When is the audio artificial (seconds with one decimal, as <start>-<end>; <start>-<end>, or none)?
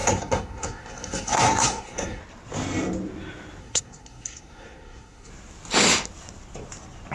0.0-2.2; 3.6-5.3